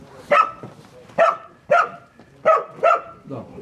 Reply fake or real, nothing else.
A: real